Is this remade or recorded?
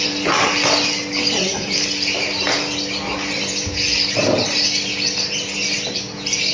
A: recorded